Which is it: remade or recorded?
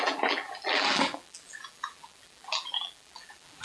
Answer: remade